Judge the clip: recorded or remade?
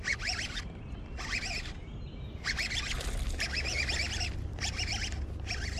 recorded